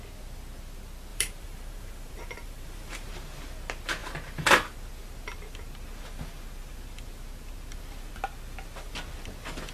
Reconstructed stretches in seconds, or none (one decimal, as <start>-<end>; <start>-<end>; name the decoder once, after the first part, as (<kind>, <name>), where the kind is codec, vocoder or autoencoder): 1.1-3.1 (vocoder, BigVGAN v2)